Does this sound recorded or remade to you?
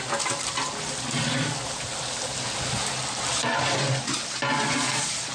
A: recorded